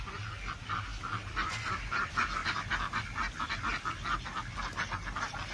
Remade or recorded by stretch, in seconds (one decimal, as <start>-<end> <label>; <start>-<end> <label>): 0.0-5.5 recorded